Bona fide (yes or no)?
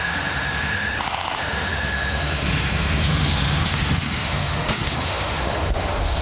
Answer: no